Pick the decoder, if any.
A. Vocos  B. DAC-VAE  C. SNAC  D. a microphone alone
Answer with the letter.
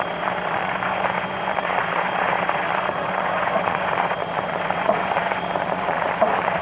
A